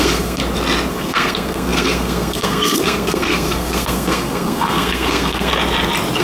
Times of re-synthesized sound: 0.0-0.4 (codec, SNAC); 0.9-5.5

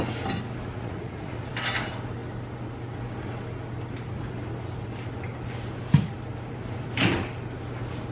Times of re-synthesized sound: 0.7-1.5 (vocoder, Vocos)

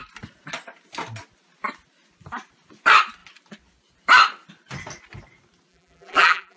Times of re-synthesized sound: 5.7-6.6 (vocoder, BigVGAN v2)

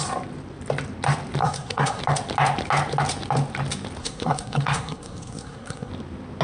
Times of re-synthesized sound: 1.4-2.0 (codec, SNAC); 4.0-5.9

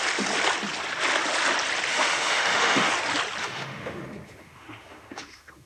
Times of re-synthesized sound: 1.9-2.9 (autoencoder, DAC-VAE); 3.4-5.7

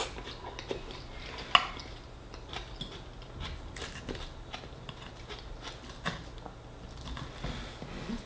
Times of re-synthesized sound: none